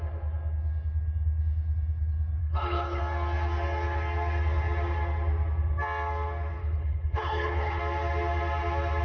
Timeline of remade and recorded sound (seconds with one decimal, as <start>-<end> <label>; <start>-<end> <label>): 0.0-2.4 recorded; 2.4-3.0 remade; 3.0-6.6 recorded; 6.6-7.8 remade; 7.8-9.0 recorded